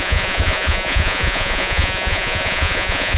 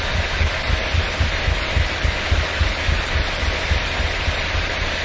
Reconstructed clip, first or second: first